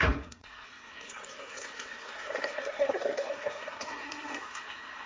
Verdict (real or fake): fake